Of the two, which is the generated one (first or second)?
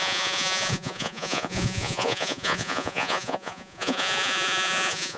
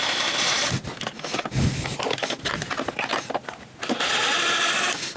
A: first